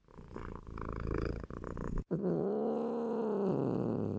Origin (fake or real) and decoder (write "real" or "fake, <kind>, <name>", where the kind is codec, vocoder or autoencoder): real